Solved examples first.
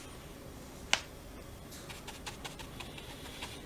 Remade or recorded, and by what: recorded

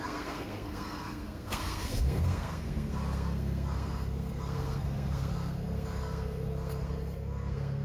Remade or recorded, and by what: remade, codec, SNAC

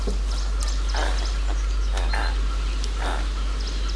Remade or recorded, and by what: recorded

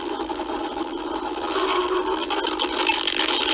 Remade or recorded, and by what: recorded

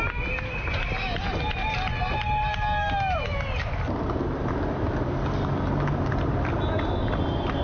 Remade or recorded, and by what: recorded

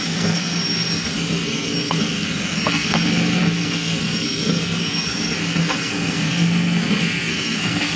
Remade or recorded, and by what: remade, codec, SNAC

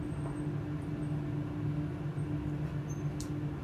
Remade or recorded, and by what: recorded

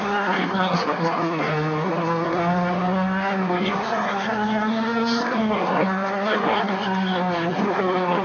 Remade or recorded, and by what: remade, codec, SNAC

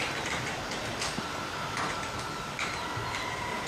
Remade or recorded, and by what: recorded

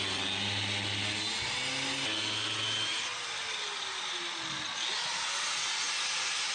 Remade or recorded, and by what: recorded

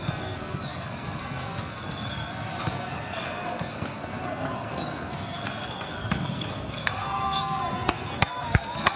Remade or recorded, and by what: remade, codec, SNAC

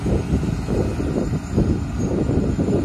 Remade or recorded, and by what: recorded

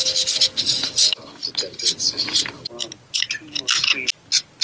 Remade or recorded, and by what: recorded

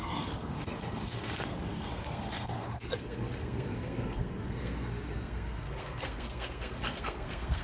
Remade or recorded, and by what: remade, codec, SNAC